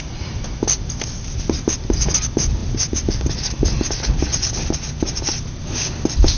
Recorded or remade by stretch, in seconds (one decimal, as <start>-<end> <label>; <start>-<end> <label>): 0.0-6.4 recorded